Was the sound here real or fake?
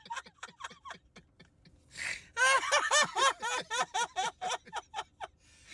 real